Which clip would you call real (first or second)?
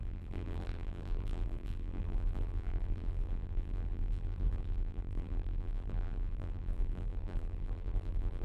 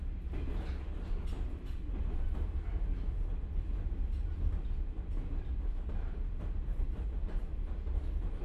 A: second